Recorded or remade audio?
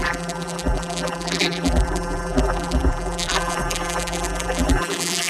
remade